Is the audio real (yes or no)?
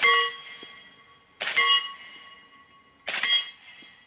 yes